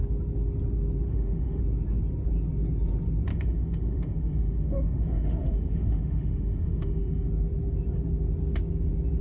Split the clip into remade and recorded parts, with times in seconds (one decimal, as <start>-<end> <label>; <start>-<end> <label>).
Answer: 0.0-1.1 recorded; 1.1-1.6 remade; 1.6-3.3 recorded; 3.3-7.3 remade; 7.3-9.2 recorded